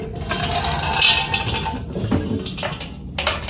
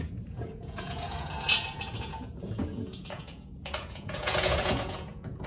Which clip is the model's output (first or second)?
second